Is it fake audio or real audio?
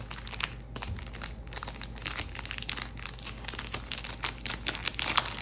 real